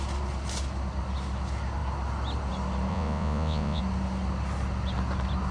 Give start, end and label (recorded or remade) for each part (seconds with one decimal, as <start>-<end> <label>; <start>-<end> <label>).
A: 0.0-2.9 recorded; 2.9-3.8 remade; 3.8-5.5 recorded